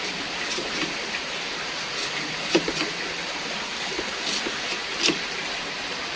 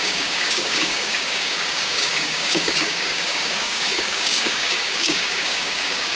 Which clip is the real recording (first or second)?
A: first